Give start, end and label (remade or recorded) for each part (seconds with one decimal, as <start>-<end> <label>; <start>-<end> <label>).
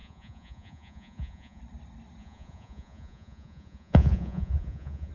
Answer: 0.0-1.6 remade; 1.6-2.2 recorded; 2.2-5.1 remade